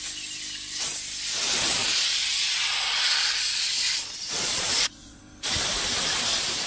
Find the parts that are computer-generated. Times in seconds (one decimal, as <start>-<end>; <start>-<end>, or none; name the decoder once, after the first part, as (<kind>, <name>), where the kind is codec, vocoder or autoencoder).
1.8-5.2 (vocoder, Vocos)